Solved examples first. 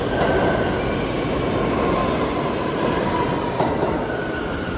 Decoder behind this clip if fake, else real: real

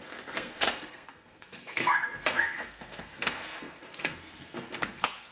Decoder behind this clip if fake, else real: fake, codec, SNAC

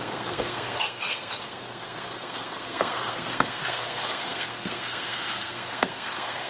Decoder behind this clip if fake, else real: fake, codec, SNAC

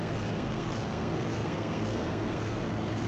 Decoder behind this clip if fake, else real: fake, codec, SNAC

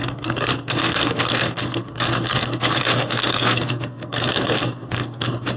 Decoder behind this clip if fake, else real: fake, codec, SNAC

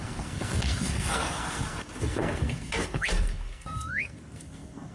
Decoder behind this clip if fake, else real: fake, codec, SNAC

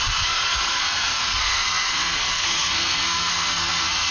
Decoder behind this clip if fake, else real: fake, codec, SNAC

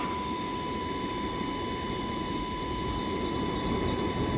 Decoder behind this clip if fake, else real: real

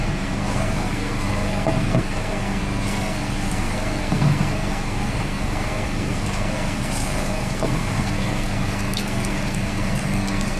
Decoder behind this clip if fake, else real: fake, codec, SNAC